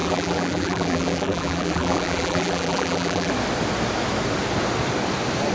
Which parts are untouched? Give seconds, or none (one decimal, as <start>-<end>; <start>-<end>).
3.3-5.5